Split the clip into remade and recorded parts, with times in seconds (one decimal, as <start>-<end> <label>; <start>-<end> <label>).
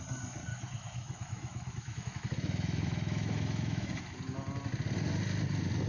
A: 0.0-0.5 recorded; 0.5-4.0 remade; 4.0-5.9 recorded